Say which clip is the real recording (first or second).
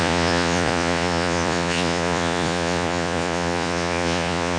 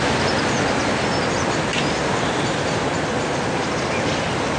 second